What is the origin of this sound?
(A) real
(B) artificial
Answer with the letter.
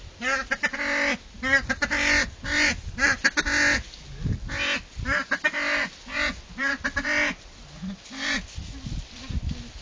A